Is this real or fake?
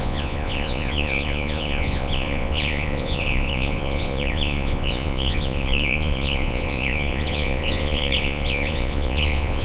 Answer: fake